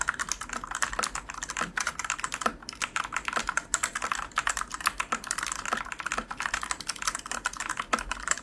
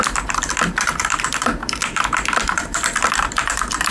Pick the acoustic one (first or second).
first